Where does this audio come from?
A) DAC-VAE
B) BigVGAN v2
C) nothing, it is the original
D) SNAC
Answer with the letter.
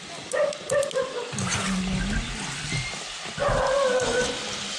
C